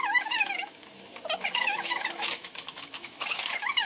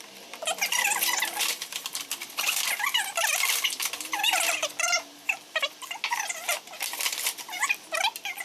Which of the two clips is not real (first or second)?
first